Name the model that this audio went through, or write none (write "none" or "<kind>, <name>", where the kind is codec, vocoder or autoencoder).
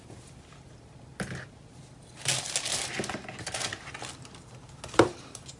none